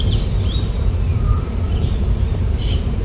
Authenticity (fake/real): fake